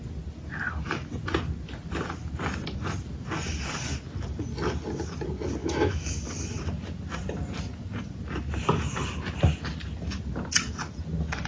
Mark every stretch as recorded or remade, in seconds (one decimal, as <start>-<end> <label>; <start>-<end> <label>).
0.0-5.6 recorded; 5.6-6.3 remade; 6.3-11.5 recorded